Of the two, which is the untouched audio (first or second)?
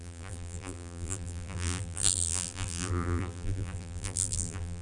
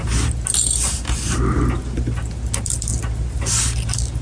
second